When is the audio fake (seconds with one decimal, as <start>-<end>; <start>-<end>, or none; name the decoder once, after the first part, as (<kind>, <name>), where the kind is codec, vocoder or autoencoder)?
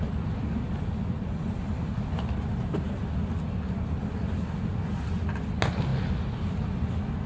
none